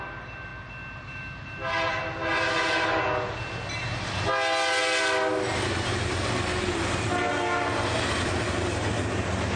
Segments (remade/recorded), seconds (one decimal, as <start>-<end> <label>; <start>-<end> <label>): 0.0-9.6 recorded